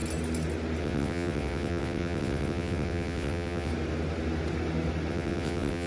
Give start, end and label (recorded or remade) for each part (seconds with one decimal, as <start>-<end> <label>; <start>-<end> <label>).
0.0-0.8 recorded; 0.8-3.7 remade; 3.7-5.1 recorded; 5.1-5.9 remade